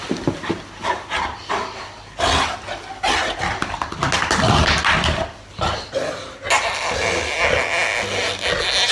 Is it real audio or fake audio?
real